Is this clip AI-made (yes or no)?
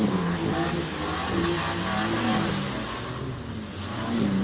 no